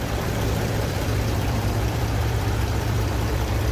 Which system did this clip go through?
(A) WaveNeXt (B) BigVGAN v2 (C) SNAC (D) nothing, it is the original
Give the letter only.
B